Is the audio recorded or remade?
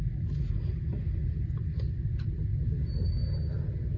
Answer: recorded